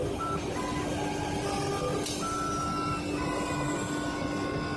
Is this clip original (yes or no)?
yes